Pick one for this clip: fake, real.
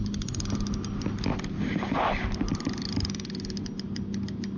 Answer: real